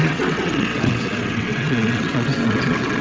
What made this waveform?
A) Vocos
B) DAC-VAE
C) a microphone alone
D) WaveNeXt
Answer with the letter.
D